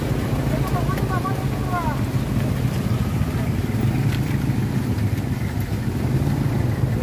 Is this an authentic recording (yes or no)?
yes